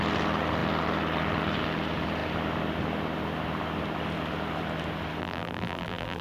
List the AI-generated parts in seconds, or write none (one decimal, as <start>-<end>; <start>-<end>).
5.2-6.2